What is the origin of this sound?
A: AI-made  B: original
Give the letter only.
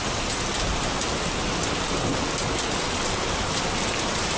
B